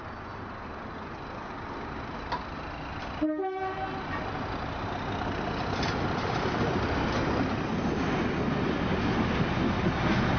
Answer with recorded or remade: recorded